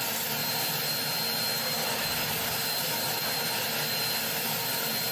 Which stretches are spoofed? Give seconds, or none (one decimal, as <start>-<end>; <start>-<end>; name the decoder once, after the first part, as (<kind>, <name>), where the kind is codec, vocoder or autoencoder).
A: 0.4-0.9 (vocoder, BigVGAN v2)